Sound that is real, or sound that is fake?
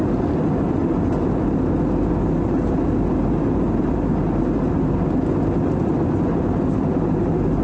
real